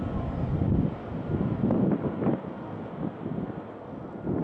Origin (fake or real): real